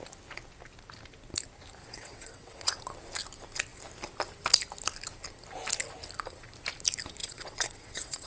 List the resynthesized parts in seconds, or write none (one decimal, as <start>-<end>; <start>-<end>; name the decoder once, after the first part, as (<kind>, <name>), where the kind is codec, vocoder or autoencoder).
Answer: 1.8-2.8 (vocoder, WaveNeXt); 7.2-8.3